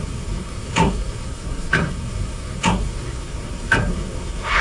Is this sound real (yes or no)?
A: no